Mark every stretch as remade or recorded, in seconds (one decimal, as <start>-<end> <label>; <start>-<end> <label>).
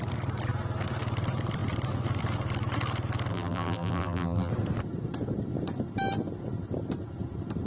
0.0-3.3 recorded; 3.3-4.5 remade; 4.5-7.7 recorded